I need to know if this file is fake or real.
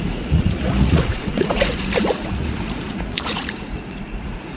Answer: fake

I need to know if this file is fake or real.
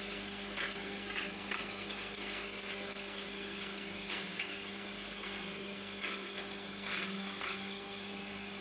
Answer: fake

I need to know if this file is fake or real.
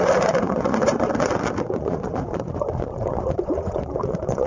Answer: fake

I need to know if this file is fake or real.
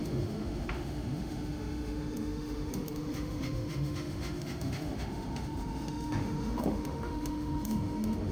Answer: fake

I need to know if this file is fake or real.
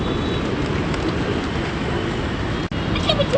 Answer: real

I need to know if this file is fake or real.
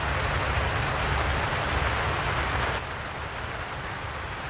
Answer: real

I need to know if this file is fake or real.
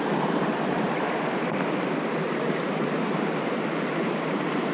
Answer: real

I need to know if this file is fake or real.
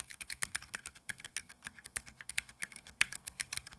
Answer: fake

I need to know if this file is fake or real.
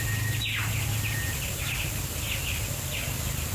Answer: real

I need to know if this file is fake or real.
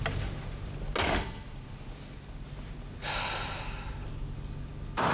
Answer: real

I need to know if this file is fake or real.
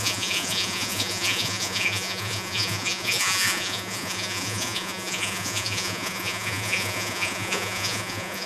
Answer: fake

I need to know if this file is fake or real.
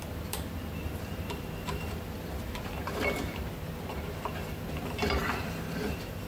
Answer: fake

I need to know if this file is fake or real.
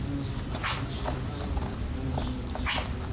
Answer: real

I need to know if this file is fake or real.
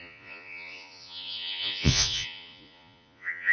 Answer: fake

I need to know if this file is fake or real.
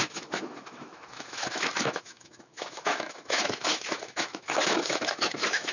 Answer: fake